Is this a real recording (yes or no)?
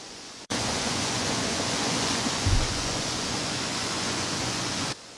no